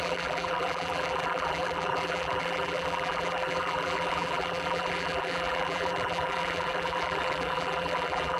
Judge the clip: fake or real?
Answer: fake